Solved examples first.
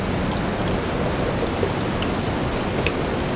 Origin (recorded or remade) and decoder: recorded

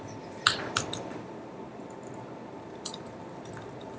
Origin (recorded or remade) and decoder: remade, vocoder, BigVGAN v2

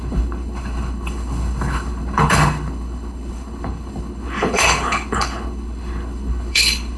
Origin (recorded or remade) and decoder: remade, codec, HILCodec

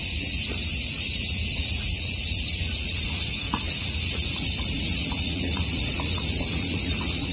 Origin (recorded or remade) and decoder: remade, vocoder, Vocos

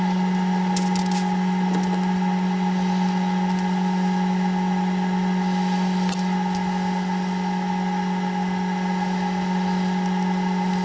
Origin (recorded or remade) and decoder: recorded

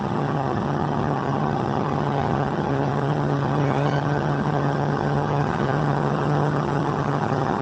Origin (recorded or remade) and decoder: remade, vocoder, HiFi-GAN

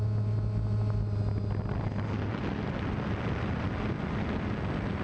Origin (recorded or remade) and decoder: recorded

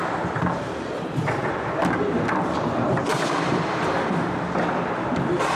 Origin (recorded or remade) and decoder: remade, vocoder, BigVGAN v2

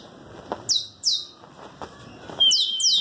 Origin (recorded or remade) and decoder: recorded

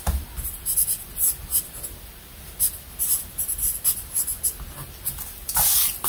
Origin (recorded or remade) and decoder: recorded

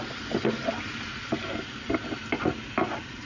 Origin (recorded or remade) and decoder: recorded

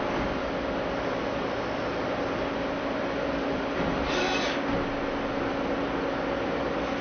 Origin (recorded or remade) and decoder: recorded